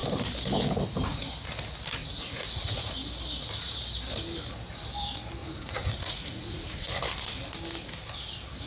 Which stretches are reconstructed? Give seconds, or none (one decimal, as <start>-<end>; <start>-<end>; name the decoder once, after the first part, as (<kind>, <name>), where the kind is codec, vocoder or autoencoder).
2.0-2.9 (vocoder, Vocos); 5.4-7.0